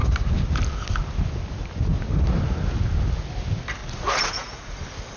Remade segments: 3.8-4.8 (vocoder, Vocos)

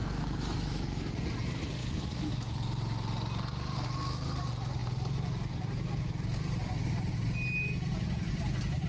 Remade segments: 0.0-1.1 (autoencoder, DAC-VAE); 1.8-2.3

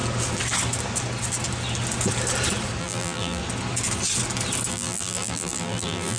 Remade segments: 2.8-3.4 (vocoder, BigVGAN v2); 4.7-6.2

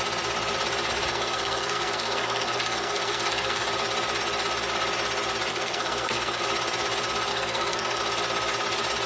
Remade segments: 1.1-3.6 (codec, SNAC); 5.5-6.4; 7.3-8.0

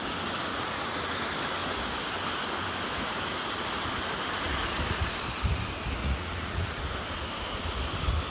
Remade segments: 0.5-1.1 (vocoder, Vocos); 6.0-6.8

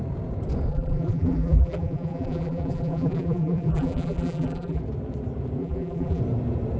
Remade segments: 0.7-4.8 (vocoder, BigVGAN v2); 5.6-6.2

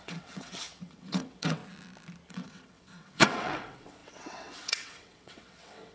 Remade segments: 0.0-1.6 (vocoder, WaveNeXt); 2.3-5.9

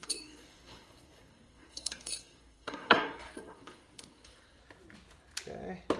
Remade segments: 0.0-4.6 (codec, SNAC)